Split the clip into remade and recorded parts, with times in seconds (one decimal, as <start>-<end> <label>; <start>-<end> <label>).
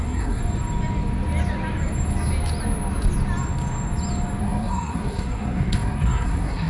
0.0-0.4 remade; 0.4-4.4 recorded; 4.4-6.7 remade